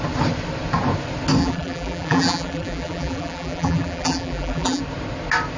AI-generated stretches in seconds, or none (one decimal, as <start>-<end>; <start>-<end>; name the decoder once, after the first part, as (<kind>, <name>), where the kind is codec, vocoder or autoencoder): 1.4-4.8 (vocoder, BigVGAN v2)